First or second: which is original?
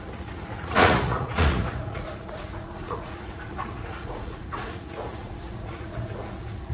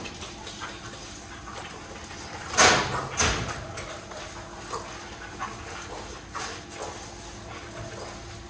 second